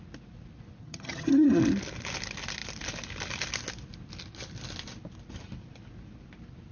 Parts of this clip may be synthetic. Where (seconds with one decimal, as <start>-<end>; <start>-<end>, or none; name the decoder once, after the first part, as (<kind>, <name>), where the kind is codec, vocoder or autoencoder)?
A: 0.8-1.6 (vocoder, HiFi-GAN)